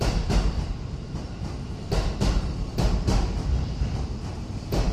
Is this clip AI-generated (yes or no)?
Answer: yes